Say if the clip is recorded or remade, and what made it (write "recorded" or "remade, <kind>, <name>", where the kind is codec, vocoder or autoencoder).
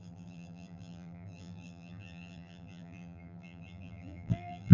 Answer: remade, vocoder, BigVGAN v2